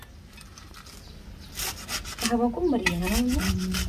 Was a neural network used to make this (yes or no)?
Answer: no